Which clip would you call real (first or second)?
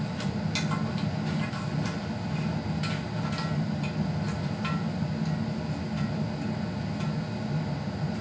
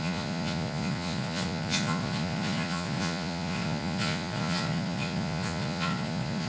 first